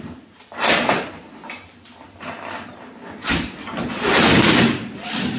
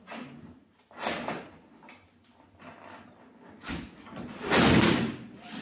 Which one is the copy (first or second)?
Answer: first